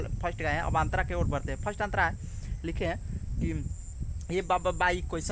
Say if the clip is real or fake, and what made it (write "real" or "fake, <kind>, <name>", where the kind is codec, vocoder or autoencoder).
real